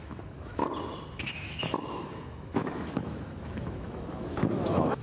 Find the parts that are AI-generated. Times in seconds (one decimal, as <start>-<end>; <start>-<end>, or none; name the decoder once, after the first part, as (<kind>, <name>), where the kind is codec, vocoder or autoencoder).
0.0-0.6 (autoencoder, DAC-VAE); 1.1-5.0